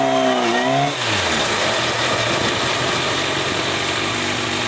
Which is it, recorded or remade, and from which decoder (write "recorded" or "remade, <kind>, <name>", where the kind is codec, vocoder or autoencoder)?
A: recorded